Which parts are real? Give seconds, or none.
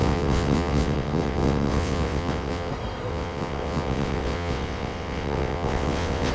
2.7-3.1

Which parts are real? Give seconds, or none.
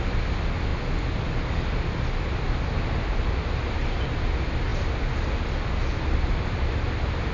0.0-7.3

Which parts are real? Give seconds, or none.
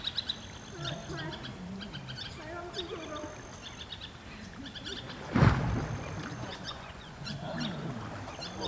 0.0-6.3; 7.5-8.7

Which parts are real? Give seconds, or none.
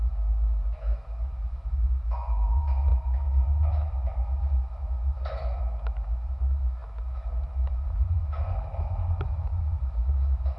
none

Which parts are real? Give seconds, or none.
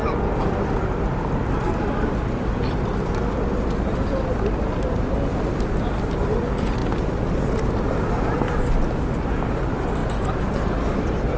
0.0-11.4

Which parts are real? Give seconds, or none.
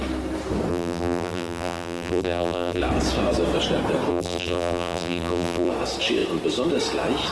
0.0-0.7; 2.8-4.1; 5.7-7.3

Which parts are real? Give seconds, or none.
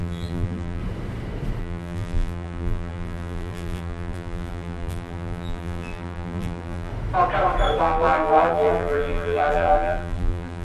0.8-1.6; 6.9-7.8